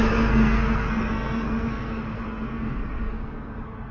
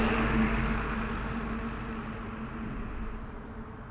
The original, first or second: second